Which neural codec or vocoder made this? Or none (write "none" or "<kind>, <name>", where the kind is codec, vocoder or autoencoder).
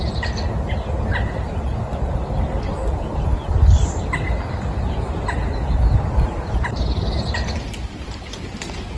none